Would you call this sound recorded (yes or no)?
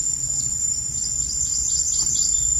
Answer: no